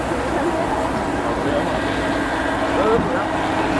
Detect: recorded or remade recorded